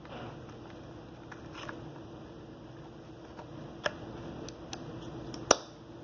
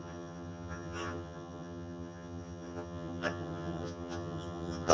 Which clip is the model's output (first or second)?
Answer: second